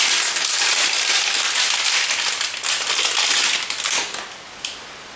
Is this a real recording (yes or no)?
yes